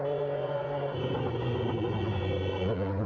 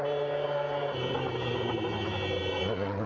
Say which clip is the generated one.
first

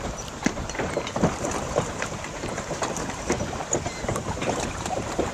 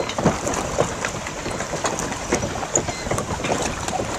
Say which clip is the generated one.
first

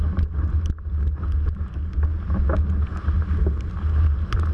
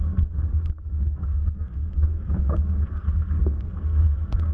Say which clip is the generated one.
second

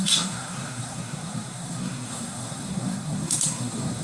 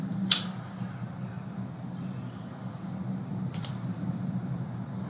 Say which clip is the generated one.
first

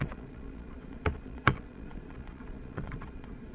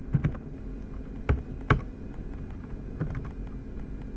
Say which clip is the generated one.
first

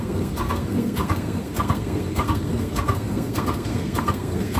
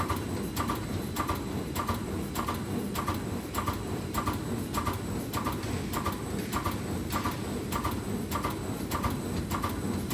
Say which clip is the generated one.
first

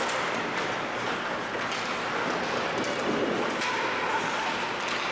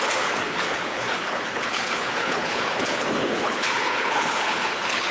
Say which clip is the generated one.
second